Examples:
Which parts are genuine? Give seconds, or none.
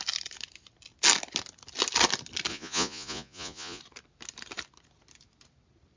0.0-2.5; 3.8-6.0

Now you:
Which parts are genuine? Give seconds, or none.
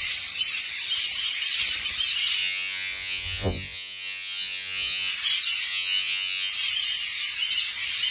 0.0-2.4; 5.1-5.7; 6.5-8.1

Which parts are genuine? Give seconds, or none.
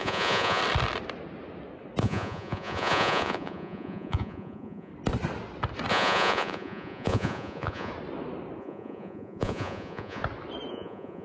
0.6-2.0; 4.9-5.9; 7.9-8.6; 10.2-10.7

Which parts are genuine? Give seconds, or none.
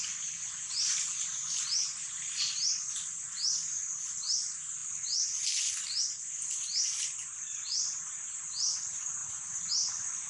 0.0-10.3